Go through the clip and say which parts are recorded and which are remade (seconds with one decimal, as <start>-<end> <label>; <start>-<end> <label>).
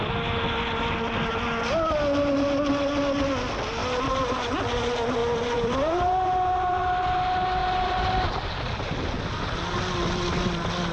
0.0-3.8 recorded; 3.8-4.6 remade; 4.6-5.2 recorded; 5.2-6.9 remade; 6.9-7.6 recorded; 7.6-8.3 remade; 8.3-10.9 recorded